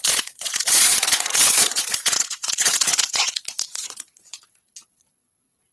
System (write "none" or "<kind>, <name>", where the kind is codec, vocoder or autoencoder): vocoder, Vocos